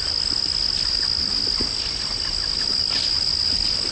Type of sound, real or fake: real